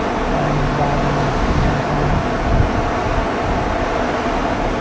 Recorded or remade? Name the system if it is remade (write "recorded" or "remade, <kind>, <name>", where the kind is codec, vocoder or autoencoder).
recorded